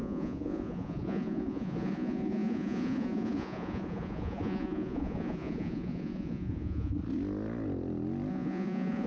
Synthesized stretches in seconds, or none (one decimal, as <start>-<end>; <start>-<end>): 0.0-7.0; 8.3-9.1